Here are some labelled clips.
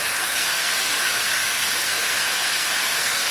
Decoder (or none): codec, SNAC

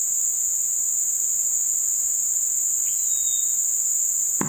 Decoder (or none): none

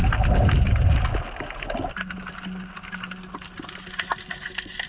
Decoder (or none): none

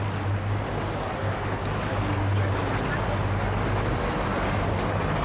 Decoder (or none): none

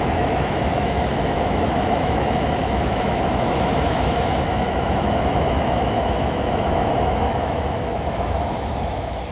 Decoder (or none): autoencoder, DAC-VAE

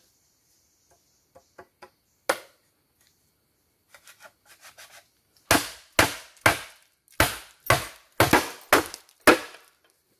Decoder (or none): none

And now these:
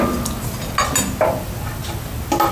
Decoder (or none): none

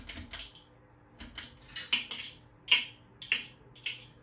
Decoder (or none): none